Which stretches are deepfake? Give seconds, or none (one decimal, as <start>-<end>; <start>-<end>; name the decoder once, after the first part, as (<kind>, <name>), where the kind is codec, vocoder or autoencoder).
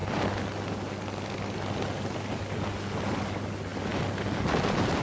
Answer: none